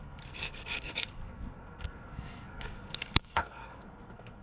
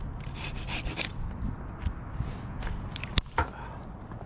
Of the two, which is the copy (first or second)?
first